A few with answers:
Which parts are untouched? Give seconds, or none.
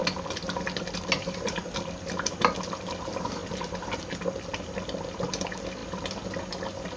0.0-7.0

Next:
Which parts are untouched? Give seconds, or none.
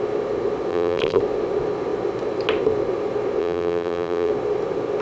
0.0-0.7; 1.2-3.4; 4.3-5.0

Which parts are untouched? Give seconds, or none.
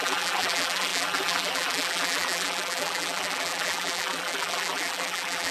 none